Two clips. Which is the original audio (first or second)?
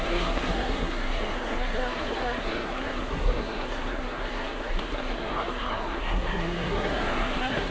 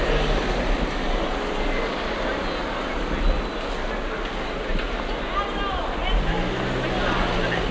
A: second